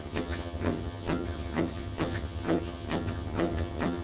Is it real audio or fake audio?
fake